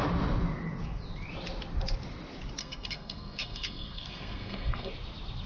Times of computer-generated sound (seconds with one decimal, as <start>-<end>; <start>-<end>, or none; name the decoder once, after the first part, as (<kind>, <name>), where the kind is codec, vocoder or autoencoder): 2.6-4.9 (codec, SNAC)